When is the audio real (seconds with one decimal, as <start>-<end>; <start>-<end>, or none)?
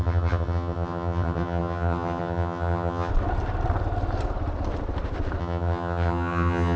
3.1-5.4